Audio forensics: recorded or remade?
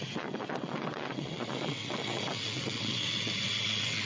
remade